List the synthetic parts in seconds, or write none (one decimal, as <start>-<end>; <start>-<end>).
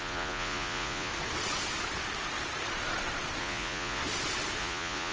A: 0.0-1.1; 3.4-4.0; 4.6-5.1